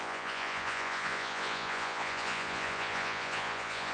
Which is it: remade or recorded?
remade